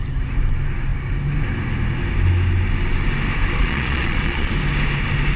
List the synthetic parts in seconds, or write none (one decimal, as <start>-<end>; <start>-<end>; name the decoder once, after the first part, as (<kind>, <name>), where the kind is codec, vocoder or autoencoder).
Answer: 3.6-4.5 (vocoder, Vocos)